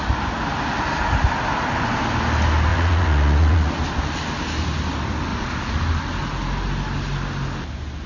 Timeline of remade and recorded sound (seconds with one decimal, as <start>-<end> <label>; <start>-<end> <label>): 0.0-2.7 recorded; 2.7-3.8 remade; 3.8-5.3 recorded; 5.3-5.8 remade; 5.8-8.1 recorded